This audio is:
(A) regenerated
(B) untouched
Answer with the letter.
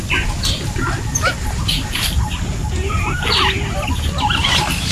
B